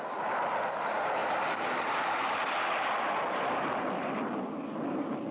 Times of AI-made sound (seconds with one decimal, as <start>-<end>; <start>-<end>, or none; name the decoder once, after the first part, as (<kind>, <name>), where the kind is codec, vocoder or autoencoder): none